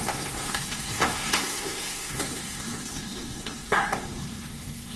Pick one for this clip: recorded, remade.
remade